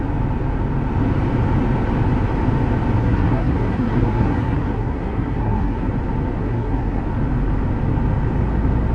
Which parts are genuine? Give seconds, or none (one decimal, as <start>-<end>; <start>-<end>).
0.0-3.0; 5.9-6.4; 7.0-8.9